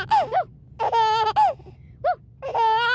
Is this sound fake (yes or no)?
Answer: no